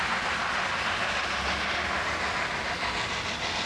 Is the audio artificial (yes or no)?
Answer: no